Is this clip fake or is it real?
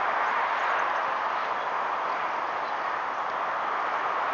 real